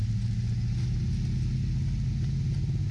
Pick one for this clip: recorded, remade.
recorded